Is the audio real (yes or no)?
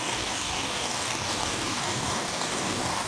no